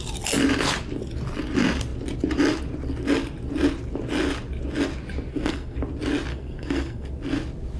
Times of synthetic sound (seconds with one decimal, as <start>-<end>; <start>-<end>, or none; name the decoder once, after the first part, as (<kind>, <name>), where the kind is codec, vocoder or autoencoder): 5.3-5.8 (codec, SNAC); 6.3-7.1